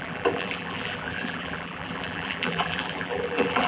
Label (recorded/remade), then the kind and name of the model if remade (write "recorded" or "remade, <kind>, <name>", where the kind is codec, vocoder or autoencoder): remade, vocoder, BigVGAN v2